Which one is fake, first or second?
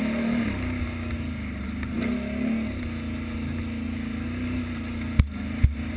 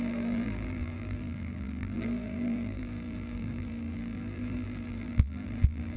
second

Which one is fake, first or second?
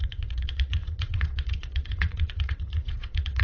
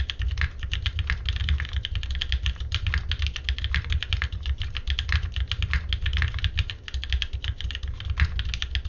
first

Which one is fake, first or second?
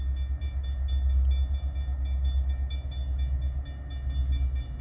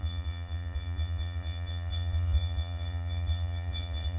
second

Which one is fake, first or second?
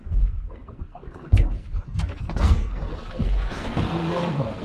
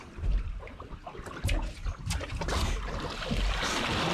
first